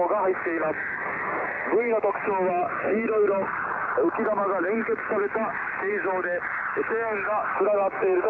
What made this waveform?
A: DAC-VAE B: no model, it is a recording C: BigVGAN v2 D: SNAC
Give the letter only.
B